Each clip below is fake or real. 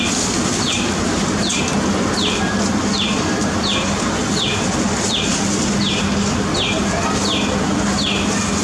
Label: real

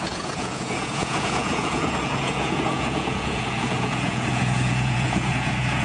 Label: fake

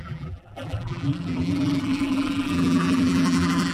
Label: fake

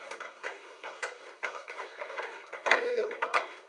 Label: fake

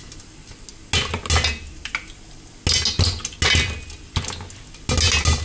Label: real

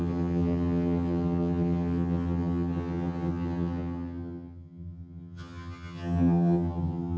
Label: fake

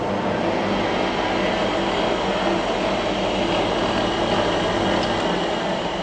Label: real